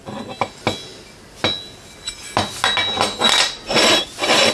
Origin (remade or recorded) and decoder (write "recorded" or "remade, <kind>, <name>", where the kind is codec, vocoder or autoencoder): recorded